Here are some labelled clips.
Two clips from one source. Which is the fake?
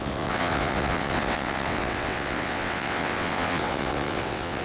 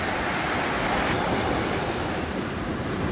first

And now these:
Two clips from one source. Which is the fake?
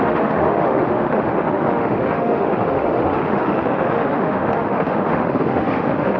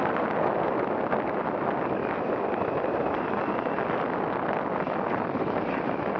first